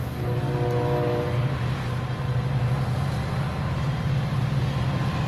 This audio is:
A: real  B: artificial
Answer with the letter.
A